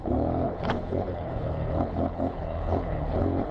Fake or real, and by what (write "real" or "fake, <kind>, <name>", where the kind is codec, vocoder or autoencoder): fake, codec, HILCodec